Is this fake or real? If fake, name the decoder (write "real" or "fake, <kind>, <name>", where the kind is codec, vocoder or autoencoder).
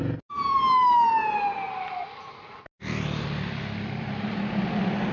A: real